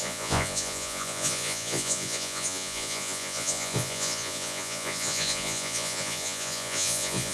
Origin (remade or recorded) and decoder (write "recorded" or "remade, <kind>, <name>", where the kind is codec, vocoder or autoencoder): remade, vocoder, Vocos